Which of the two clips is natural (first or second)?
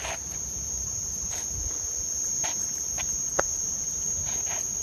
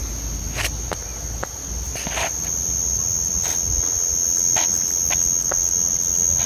second